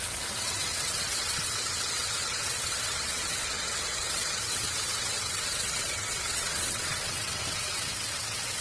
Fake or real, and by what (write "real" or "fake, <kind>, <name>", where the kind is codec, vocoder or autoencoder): fake, vocoder, WaveNeXt